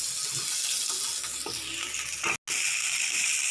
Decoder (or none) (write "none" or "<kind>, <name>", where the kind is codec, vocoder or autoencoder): none